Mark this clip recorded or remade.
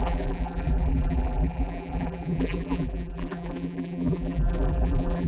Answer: remade